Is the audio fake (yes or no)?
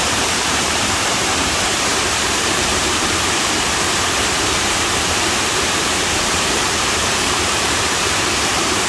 yes